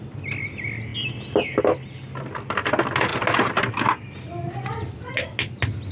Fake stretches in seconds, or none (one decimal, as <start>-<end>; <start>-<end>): none